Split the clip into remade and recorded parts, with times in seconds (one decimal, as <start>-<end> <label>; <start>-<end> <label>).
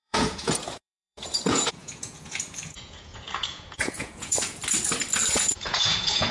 0.0-4.6 remade; 4.6-5.3 recorded; 5.3-6.3 remade